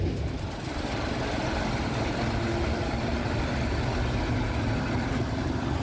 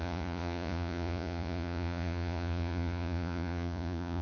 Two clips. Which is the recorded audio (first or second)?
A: first